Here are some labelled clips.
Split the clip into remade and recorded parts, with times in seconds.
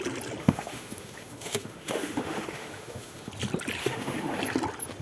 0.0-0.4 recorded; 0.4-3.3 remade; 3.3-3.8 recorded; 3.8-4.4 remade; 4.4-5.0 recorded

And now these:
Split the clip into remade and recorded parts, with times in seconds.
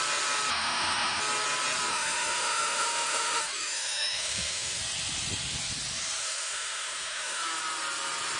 0.0-0.5 recorded; 0.5-1.2 remade; 1.2-1.9 recorded; 1.9-4.8 remade; 4.8-6.2 recorded; 6.2-7.4 remade; 7.4-8.4 recorded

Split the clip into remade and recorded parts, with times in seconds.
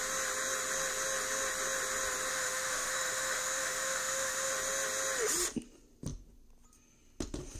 0.0-2.3 recorded; 2.3-4.5 remade; 4.5-7.6 recorded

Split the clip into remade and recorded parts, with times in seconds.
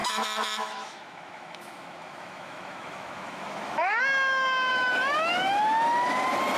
0.0-4.0 remade; 4.0-4.7 recorded; 4.7-5.6 remade; 5.6-6.6 recorded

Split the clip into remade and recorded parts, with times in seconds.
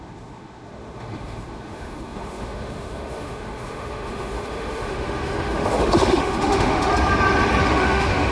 0.0-6.9 remade; 6.9-7.6 recorded; 7.6-8.3 remade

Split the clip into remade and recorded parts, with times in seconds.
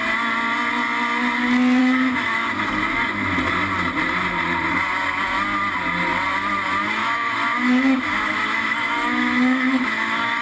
0.0-1.8 recorded; 1.8-2.6 remade; 2.6-7.0 recorded; 7.0-10.4 remade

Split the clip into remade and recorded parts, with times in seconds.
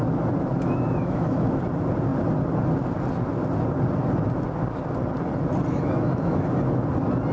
0.0-0.5 recorded; 0.5-1.6 remade; 1.6-5.7 recorded; 5.7-6.4 remade; 6.4-7.3 recorded